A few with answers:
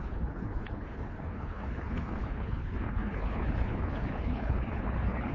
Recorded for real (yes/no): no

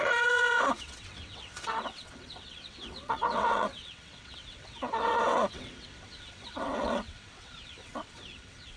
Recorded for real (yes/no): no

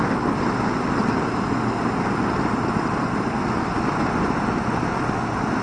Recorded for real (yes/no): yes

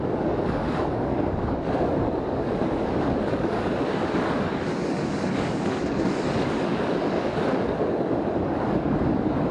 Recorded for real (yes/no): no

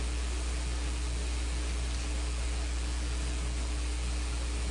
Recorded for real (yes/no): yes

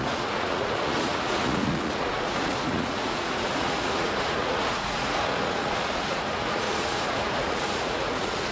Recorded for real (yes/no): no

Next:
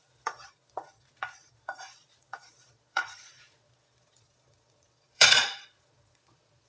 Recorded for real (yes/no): no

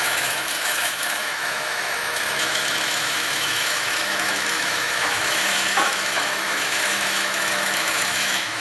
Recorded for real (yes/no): no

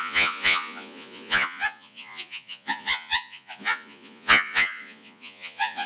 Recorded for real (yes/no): no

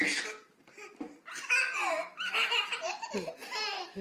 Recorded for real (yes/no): yes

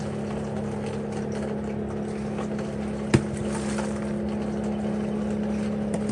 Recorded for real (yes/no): yes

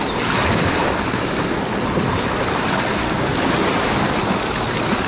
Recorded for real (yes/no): yes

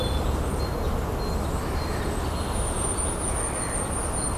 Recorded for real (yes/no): yes